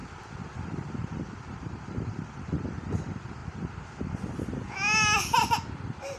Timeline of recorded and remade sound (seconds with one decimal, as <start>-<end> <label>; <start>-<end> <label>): 0.0-1.2 remade; 1.2-6.2 recorded